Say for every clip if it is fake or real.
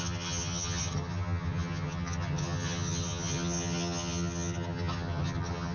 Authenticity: fake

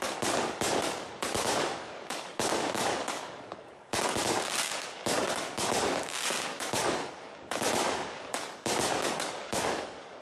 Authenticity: fake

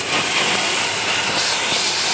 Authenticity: real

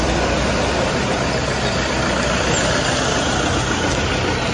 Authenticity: real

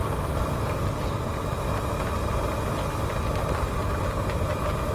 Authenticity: real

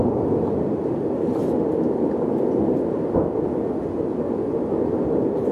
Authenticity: real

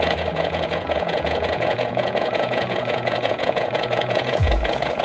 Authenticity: fake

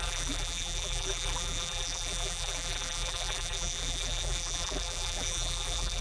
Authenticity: fake